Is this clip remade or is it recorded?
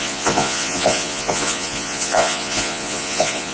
remade